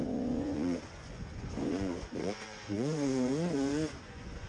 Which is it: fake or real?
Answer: fake